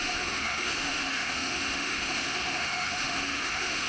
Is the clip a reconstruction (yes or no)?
yes